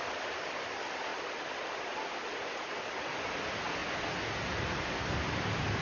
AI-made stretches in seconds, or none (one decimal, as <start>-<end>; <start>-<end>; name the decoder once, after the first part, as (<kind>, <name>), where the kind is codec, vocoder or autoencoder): none